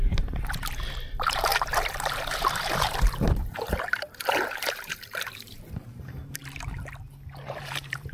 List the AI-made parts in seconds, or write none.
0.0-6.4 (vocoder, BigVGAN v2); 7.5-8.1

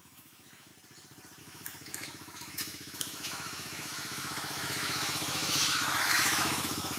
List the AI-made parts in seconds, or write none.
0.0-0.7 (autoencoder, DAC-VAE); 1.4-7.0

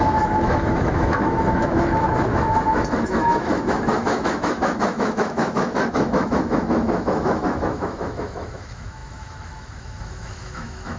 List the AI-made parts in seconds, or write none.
0.0-11.0 (autoencoder, DAC-VAE)

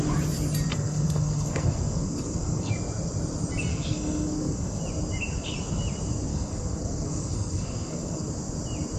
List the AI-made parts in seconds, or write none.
0.7-2.7 (codec, SNAC); 3.7-4.8; 6.3-8.3

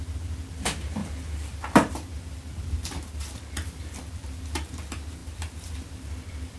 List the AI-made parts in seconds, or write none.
1.0-2.4 (vocoder, BigVGAN v2); 5.2-5.9

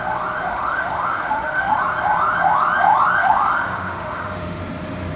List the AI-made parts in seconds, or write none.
0.5-1.8 (autoencoder, DAC-VAE); 3.2-4.6

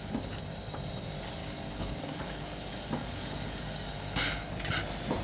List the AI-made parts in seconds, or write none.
1.4-4.5 (codec, DAC)